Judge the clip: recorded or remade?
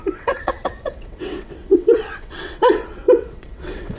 remade